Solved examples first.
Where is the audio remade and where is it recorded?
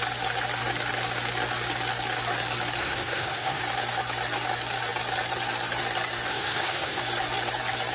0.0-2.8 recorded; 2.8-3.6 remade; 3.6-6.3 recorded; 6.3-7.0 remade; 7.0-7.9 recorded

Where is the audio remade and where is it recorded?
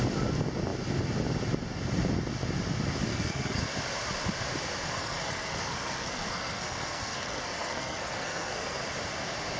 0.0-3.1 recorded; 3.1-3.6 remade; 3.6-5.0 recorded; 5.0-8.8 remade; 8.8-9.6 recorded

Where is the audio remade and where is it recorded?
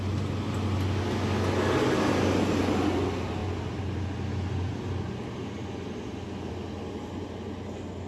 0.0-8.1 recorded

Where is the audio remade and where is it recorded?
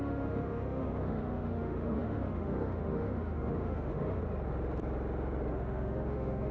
0.0-4.2 remade; 4.2-5.5 recorded; 5.5-6.5 remade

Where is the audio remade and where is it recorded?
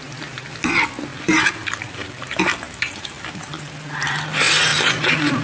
0.0-1.1 recorded; 1.1-3.6 remade; 3.6-4.7 recorded; 4.7-5.4 remade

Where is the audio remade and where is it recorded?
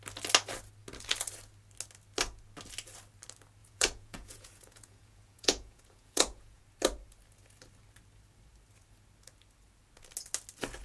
0.0-3.6 recorded; 3.6-6.6 remade; 6.6-10.8 recorded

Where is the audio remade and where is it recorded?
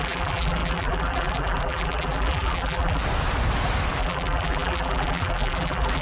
0.0-3.0 remade; 3.0-4.0 recorded; 4.0-6.0 remade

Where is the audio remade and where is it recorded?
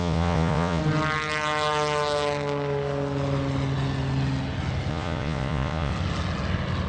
0.0-0.8 remade; 0.8-4.9 recorded; 4.9-5.9 remade; 5.9-6.9 recorded